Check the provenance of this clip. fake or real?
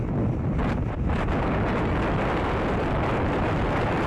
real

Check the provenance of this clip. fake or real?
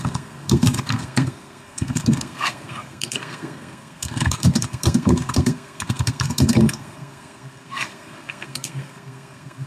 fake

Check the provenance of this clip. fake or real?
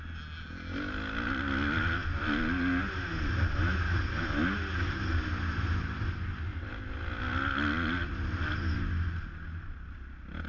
real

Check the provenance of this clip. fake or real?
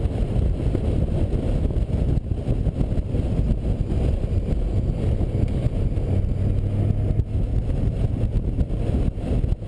real